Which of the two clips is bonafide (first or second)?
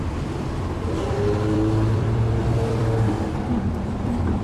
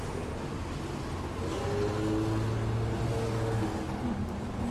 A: second